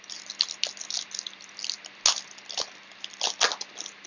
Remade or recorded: recorded